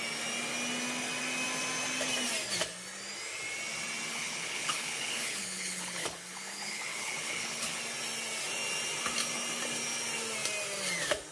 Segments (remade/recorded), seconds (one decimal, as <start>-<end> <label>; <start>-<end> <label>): 0.0-4.1 recorded; 4.1-7.8 remade; 7.8-11.3 recorded